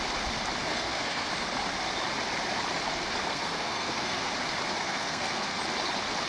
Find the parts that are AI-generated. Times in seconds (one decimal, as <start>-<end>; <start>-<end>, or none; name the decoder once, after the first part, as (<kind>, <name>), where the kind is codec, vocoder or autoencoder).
0.7-1.3 (codec, SNAC); 3.3-4.3; 4.8-5.6